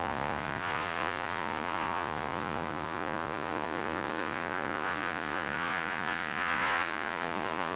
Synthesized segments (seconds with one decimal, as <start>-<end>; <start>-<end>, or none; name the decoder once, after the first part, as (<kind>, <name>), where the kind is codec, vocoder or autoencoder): 0.0-7.8 (vocoder, Vocos)